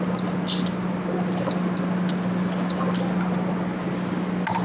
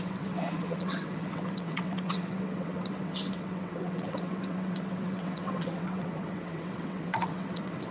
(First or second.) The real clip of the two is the first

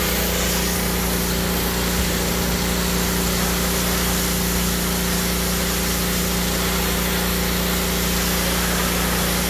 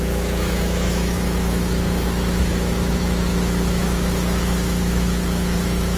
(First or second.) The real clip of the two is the first